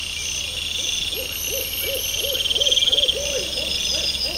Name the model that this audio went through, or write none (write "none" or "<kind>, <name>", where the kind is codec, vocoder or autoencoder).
none